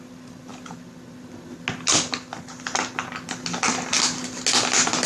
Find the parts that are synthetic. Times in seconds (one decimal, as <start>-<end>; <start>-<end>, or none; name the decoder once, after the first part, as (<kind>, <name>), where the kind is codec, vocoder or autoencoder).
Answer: none